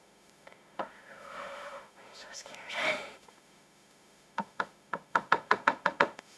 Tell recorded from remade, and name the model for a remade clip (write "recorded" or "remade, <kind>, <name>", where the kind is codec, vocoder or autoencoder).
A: remade, autoencoder, DAC-VAE